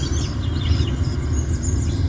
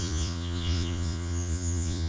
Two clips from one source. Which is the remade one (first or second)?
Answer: second